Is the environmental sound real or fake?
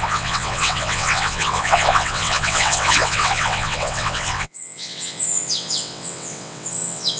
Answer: fake